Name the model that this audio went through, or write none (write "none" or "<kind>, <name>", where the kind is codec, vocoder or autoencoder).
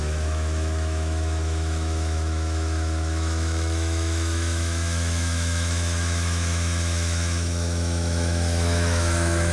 autoencoder, DAC-VAE